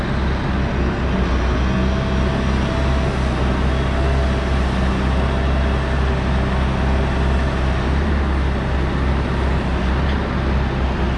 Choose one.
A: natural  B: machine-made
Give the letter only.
A